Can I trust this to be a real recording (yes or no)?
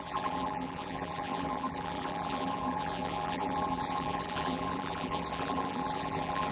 no